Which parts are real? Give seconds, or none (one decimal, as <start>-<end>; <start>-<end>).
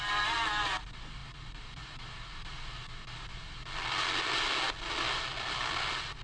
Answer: 0.0-6.2